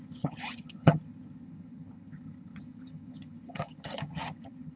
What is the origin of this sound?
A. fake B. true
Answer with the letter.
A